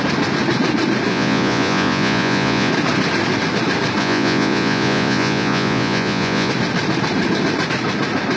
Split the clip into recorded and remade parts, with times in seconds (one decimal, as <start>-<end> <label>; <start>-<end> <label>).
0.0-1.1 recorded; 1.1-2.7 remade; 2.7-4.0 recorded; 4.0-6.5 remade; 6.5-8.4 recorded